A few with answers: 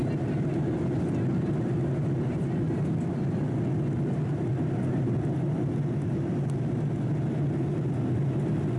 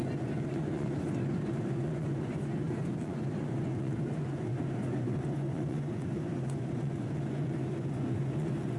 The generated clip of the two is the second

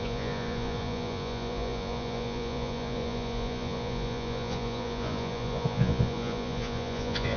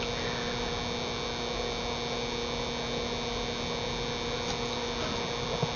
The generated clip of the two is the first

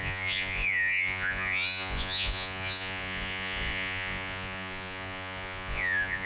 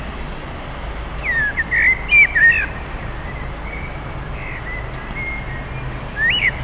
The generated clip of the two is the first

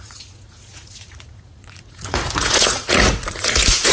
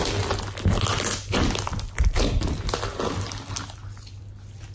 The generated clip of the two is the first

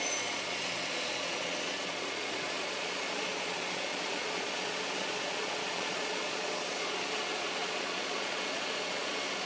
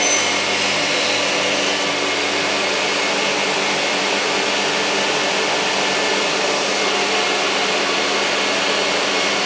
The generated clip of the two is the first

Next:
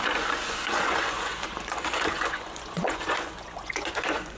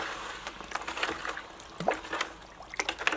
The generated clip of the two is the first